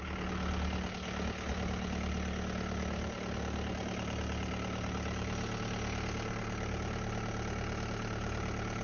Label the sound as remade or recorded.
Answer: recorded